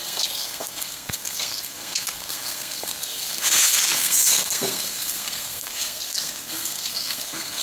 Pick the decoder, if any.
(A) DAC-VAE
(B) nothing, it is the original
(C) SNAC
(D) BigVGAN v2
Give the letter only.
C